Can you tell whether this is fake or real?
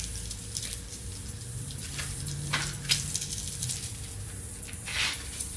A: fake